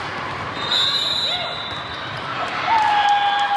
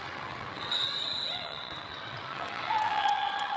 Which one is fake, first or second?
second